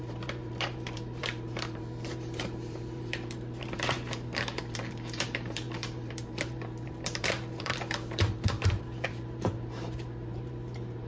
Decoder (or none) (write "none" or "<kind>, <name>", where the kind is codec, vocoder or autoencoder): vocoder, BigVGAN v2